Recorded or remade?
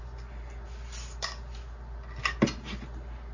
recorded